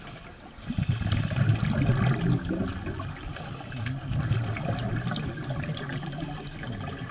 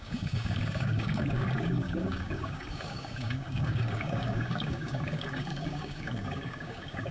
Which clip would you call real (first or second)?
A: first